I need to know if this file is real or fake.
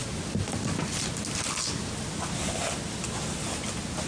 real